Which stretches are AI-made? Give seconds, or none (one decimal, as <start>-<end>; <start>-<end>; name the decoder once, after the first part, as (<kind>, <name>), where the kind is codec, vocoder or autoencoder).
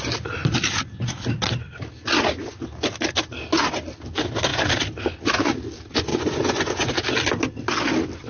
6.1-6.9 (vocoder, Vocos)